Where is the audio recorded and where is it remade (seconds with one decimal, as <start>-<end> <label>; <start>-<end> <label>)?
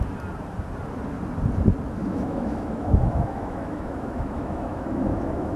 0.0-2.0 recorded; 2.0-5.6 remade